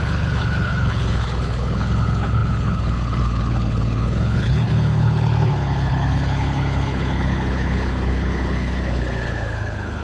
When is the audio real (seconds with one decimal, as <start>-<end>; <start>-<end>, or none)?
none